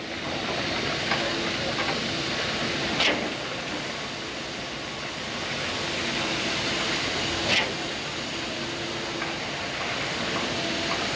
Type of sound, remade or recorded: recorded